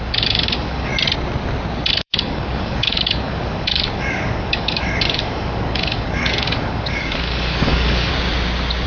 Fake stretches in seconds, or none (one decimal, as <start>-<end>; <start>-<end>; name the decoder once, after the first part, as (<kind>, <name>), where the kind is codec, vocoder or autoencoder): 0.0-0.9 (codec, DAC); 1.9-8.1